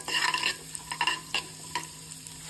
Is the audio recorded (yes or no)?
yes